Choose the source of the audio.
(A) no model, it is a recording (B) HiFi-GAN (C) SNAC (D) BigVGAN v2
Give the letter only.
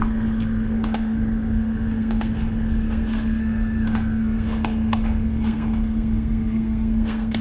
C